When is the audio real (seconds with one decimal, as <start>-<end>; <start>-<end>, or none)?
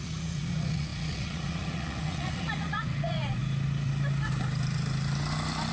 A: 3.4-5.7